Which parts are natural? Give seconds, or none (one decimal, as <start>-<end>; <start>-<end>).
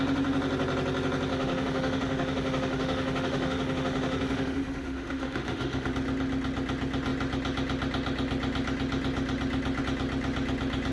0.0-1.3; 5.9-10.9